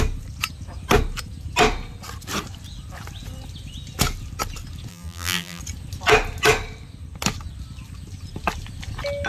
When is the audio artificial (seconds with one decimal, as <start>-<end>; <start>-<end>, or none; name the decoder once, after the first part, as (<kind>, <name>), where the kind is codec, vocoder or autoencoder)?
4.9-5.6 (vocoder, BigVGAN v2)